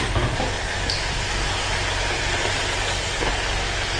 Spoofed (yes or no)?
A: no